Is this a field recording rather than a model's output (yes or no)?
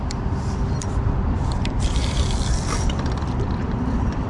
no